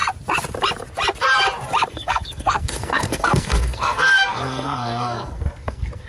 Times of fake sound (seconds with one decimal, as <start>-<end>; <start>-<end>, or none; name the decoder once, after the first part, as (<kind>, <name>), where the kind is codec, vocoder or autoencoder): 1.9-6.1 (codec, SNAC)